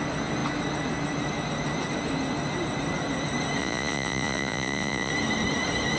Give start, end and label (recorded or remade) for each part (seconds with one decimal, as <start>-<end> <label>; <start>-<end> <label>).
0.0-3.6 recorded; 3.6-5.1 remade; 5.1-6.0 recorded